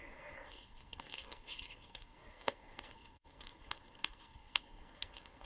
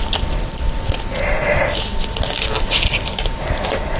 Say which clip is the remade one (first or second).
first